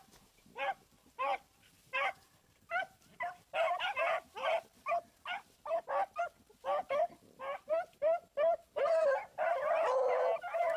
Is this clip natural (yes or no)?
yes